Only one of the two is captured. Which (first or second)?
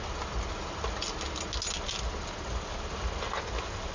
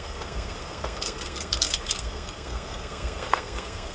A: first